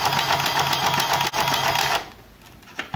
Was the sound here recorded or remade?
recorded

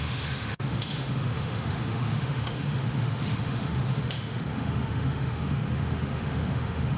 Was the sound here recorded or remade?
remade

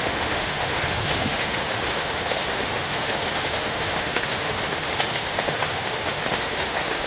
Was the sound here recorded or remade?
remade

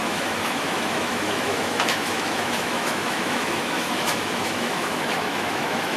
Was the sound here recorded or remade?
remade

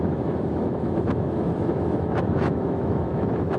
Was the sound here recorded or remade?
remade